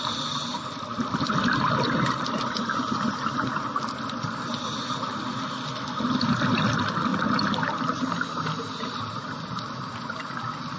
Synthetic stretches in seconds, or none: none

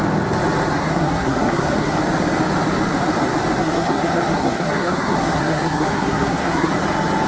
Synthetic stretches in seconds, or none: 0.8-2.0 (codec, SNAC); 3.6-6.7

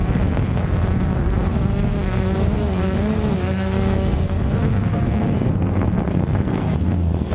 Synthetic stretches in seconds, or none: 0.0-7.3 (codec, SNAC)

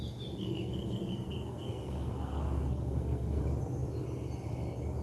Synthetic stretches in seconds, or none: 0.4-3.4 (codec, SNAC)